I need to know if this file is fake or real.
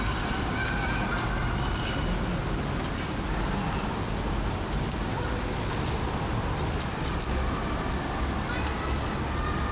real